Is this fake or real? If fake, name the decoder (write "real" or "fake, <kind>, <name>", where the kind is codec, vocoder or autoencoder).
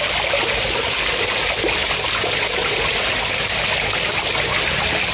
real